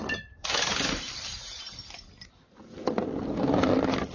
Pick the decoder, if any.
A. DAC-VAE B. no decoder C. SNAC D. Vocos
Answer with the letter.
B